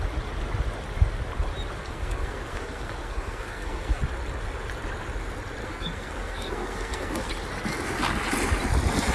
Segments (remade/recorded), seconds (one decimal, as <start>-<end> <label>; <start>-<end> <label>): 0.0-1.8 recorded; 1.8-4.0 remade; 4.0-5.6 recorded; 5.6-7.3 remade; 7.3-9.1 recorded